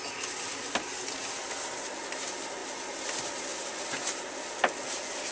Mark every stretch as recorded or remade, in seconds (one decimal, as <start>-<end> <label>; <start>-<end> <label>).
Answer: 0.0-5.3 recorded